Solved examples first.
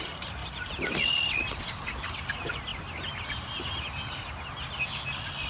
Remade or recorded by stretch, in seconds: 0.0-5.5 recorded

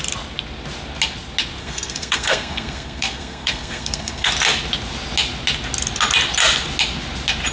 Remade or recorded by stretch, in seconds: 0.0-1.6 recorded; 1.6-4.3 remade; 4.3-7.5 recorded

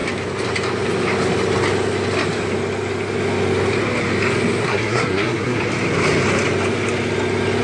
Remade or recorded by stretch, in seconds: 0.0-4.6 recorded; 4.6-5.6 remade; 5.6-7.6 recorded